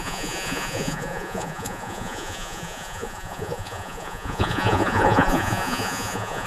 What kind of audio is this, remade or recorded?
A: remade